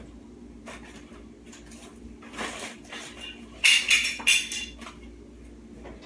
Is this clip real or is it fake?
real